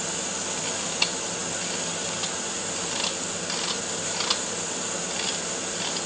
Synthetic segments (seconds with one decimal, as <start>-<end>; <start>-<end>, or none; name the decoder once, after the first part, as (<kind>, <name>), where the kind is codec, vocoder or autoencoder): none